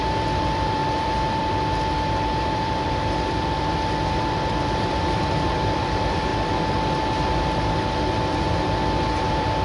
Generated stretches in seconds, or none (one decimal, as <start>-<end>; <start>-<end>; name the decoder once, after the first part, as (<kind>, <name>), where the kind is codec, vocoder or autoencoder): 0.0-6.3 (vocoder, BigVGAN v2); 9.2-9.6